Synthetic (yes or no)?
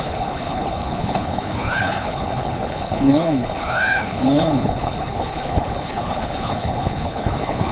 yes